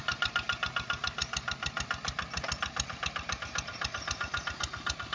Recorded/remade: recorded